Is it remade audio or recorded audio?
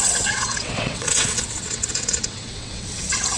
remade